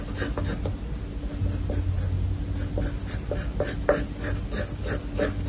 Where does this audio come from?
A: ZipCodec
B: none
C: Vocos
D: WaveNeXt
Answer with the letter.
B